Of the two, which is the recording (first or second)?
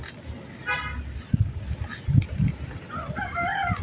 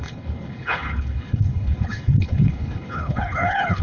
first